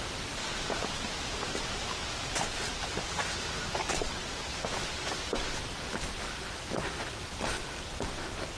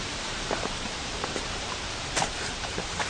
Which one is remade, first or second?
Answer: second